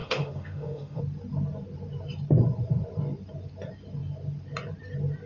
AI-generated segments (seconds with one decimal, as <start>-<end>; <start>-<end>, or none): 0.0-1.0